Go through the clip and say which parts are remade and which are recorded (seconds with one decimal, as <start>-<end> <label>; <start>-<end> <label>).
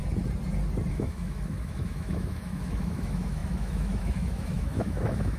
0.0-0.9 recorded; 0.9-5.4 remade